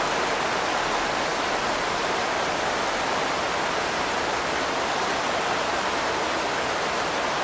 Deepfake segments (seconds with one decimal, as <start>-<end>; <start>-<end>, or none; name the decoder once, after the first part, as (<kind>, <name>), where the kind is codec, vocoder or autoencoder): none